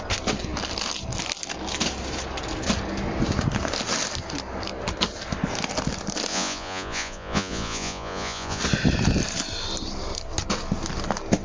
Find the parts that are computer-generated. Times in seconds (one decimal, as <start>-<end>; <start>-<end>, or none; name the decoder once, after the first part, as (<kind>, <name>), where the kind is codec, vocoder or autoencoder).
6.3-8.6 (vocoder, Vocos)